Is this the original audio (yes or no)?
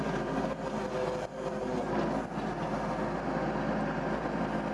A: yes